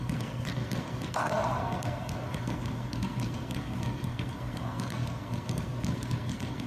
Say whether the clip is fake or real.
fake